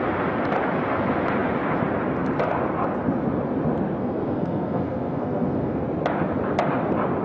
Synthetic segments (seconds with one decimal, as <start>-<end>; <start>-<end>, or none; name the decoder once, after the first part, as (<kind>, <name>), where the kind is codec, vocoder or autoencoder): 4.0-5.8 (codec, SNAC)